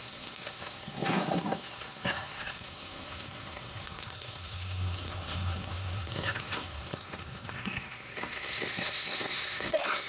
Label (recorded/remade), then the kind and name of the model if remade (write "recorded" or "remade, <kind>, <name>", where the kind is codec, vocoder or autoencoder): remade, codec, SNAC